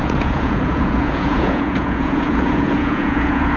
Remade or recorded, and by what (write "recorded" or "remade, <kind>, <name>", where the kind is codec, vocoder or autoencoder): remade, vocoder, Vocos